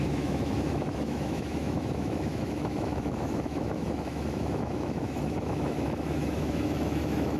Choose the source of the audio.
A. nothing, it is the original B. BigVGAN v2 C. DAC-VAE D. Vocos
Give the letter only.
C